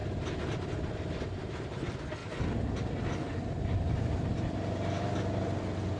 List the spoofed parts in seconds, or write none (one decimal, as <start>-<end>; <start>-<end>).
none

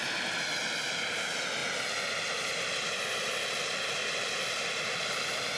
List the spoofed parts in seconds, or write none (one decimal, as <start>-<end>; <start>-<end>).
none

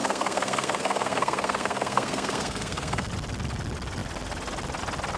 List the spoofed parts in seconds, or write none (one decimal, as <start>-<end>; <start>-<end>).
0.0-3.1

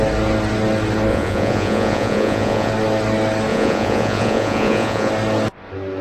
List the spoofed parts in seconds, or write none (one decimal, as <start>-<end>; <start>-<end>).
1.1-2.7; 3.5-5.1

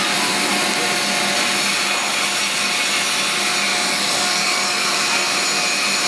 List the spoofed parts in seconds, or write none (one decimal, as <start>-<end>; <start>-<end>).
3.7-5.0